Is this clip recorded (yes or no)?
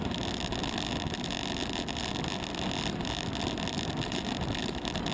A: yes